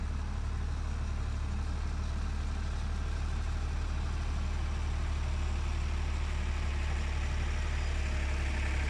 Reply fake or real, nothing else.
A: real